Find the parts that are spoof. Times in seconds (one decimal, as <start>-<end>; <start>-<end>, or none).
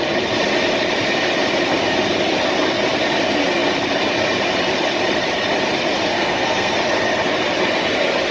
6.1-6.7